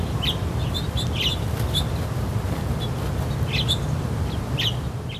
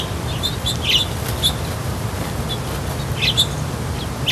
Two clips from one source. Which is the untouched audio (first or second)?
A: second